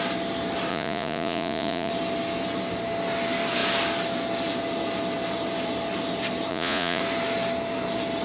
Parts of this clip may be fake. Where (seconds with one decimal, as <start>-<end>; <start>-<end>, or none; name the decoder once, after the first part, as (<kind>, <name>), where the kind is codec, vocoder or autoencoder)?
0.7-1.9 (vocoder, Vocos); 6.5-7.0